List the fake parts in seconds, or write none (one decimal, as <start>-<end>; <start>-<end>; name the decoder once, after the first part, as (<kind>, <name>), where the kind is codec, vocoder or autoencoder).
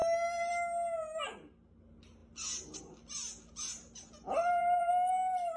3.7-4.9 (vocoder, BigVGAN v2)